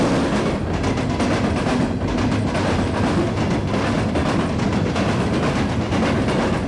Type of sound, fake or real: real